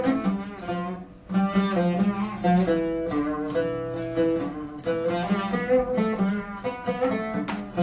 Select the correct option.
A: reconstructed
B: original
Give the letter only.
B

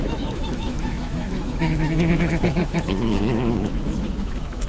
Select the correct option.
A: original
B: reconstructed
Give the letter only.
B